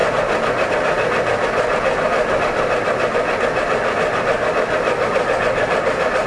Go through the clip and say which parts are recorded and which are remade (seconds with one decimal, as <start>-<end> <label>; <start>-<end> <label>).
0.0-6.3 recorded